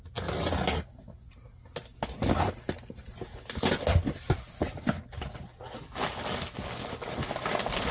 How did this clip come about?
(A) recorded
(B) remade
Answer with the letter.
A